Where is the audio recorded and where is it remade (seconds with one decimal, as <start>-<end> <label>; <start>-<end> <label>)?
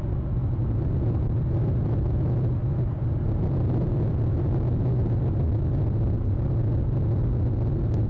0.0-8.1 recorded